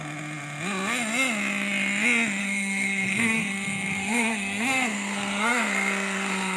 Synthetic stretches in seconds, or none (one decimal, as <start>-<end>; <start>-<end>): 2.4-6.6